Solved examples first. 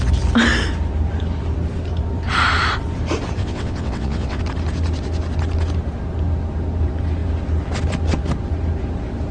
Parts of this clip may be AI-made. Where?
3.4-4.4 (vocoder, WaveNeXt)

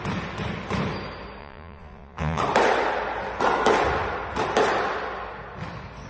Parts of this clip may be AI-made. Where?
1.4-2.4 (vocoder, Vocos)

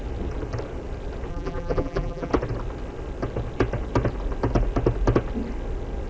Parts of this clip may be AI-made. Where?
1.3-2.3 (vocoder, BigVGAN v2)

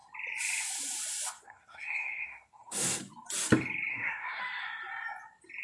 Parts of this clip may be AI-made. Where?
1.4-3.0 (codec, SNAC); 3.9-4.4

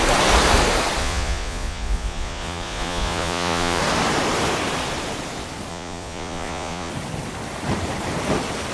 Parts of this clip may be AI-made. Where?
1.0-3.8 (vocoder, Vocos); 5.7-6.9